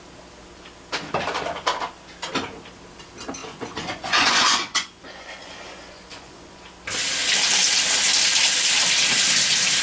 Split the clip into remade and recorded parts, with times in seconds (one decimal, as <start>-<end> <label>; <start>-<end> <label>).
0.0-3.4 recorded; 3.4-6.6 remade; 6.6-9.8 recorded